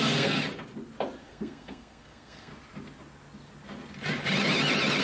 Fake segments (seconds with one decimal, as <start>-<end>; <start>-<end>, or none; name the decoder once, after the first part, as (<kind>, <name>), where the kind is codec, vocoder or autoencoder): 0.0-0.4 (codec, SNAC); 1.2-2.5

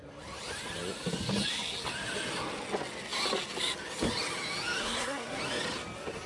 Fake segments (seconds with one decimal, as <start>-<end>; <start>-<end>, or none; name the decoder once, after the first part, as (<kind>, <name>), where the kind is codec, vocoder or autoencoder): 4.8-5.4 (codec, SNAC)

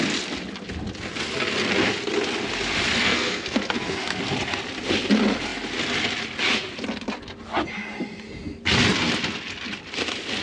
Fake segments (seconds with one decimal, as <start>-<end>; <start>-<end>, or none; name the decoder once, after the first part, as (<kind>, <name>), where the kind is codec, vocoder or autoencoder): 3.0-4.2 (codec, SNAC)